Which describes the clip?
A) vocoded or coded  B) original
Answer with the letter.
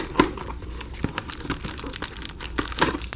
B